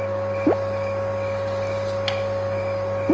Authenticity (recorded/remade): recorded